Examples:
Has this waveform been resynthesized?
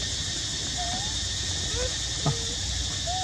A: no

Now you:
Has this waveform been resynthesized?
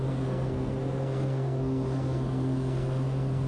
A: yes